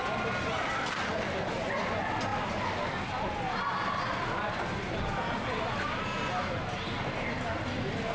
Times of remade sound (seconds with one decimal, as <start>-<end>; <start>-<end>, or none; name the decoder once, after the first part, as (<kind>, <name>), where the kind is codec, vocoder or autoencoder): none